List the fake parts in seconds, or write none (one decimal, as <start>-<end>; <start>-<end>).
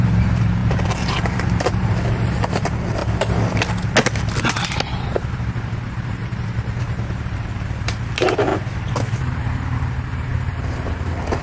0.0-3.0; 6.8-11.4